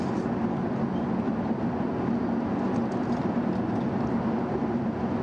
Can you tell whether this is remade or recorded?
recorded